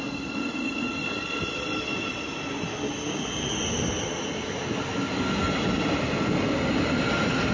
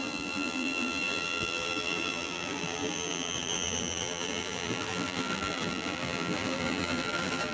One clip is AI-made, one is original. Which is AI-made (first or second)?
second